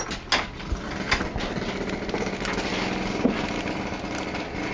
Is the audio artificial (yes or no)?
no